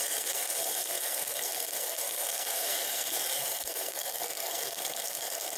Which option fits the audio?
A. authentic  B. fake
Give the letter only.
B